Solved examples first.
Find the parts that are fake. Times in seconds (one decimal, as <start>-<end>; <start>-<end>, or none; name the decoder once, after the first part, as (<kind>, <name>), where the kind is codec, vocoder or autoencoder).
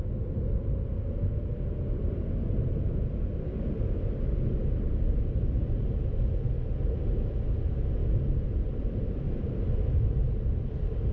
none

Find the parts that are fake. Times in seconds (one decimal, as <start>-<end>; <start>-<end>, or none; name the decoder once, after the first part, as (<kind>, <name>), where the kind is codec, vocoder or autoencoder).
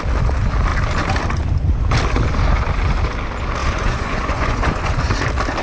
3.6-5.1 (vocoder, Vocos)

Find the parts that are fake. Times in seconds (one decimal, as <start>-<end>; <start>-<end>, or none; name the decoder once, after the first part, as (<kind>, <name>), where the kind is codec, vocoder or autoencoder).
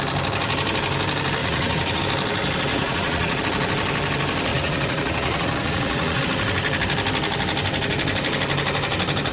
1.4-2.0 (vocoder, Vocos); 2.7-3.4; 4.5-6.2